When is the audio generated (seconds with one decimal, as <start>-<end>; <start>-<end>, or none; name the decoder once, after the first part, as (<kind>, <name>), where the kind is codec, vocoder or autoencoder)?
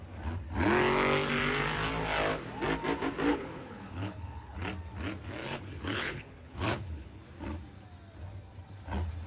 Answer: 3.3-4.6 (codec, HILCodec); 5.4-7.2